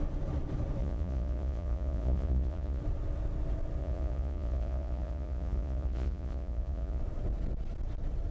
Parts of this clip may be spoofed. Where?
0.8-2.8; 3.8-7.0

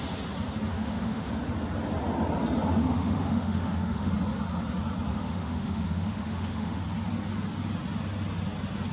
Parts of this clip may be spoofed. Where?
0.7-1.3; 2.8-4.1; 5.1-6.8

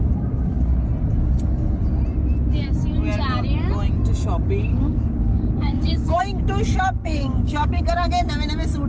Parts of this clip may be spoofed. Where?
4.7-6.2; 7.0-7.8